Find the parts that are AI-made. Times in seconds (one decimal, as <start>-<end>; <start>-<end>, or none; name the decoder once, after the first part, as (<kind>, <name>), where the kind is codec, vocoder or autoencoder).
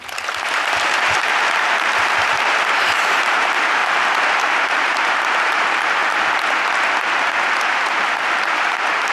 0.0-6.0 (vocoder, BigVGAN v2); 8.3-9.1